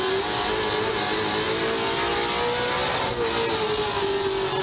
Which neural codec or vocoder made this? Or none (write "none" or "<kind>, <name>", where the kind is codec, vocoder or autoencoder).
none